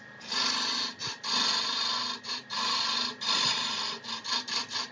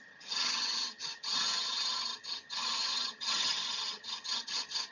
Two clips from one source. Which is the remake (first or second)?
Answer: second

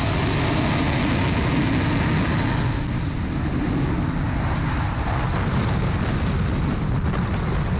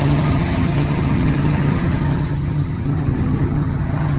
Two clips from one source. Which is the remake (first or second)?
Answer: second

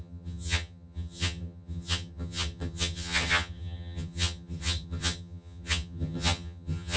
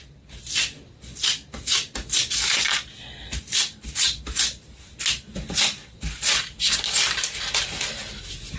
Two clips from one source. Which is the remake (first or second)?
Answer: first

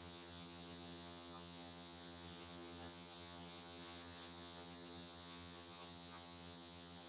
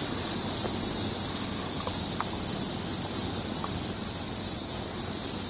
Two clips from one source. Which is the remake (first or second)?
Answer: first